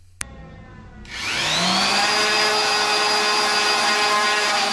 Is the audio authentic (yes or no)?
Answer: yes